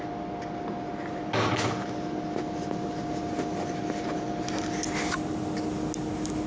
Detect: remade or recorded recorded